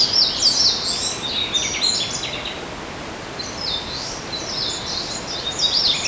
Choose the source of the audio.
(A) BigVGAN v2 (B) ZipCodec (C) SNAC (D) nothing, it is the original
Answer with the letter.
D